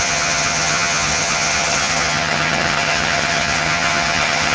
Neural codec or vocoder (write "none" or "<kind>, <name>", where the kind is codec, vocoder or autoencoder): vocoder, HiFi-GAN